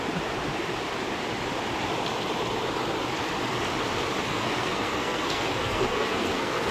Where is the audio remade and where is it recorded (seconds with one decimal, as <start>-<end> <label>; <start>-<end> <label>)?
0.0-4.3 recorded; 4.3-6.7 remade